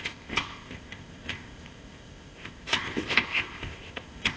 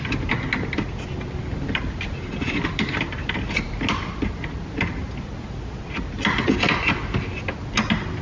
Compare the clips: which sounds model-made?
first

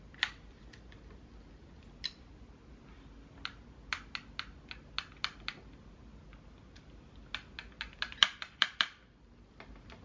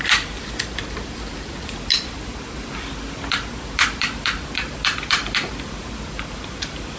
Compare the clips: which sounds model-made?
second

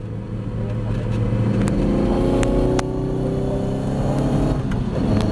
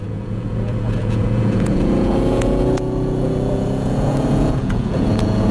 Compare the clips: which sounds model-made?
second